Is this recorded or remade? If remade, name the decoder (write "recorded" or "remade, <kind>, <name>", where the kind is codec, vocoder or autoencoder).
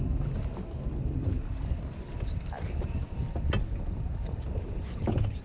recorded